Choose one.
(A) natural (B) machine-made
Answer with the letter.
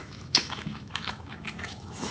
B